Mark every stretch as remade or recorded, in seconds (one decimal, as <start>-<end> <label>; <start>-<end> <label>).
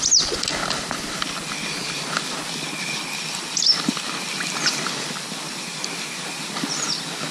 0.0-7.3 recorded